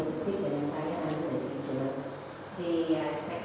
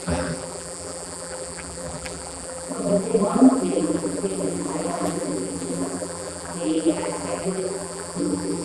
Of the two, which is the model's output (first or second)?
second